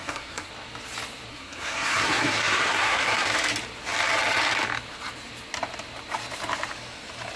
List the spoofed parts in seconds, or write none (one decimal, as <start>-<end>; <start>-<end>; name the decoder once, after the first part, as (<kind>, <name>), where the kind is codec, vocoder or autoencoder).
0.0-0.5 (codec, SNAC); 1.3-3.3